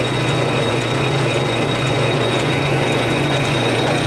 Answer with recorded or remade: remade